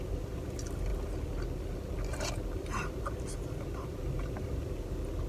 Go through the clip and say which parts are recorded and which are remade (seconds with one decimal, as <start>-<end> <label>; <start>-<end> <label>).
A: 0.0-5.3 recorded